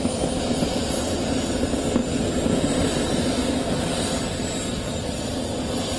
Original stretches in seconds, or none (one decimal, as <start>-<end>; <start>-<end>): 0.0-6.0